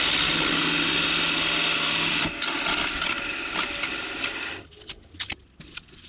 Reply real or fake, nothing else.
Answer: real